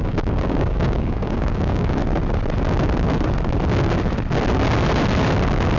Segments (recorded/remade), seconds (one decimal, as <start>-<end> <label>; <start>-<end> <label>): 0.0-2.0 remade; 2.0-5.8 recorded